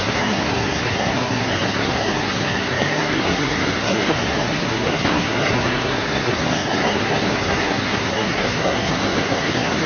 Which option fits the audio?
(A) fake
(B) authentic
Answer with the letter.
A